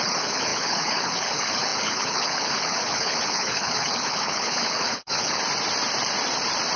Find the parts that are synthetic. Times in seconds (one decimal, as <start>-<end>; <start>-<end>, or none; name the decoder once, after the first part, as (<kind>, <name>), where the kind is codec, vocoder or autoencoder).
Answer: 0.0-5.4 (codec, HILCodec)